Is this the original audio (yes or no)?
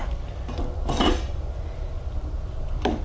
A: yes